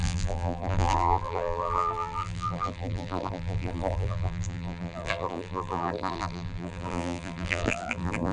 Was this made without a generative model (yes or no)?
no